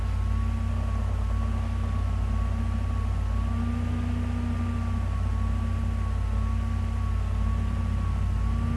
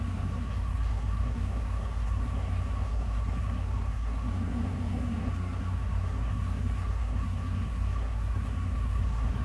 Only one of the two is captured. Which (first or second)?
first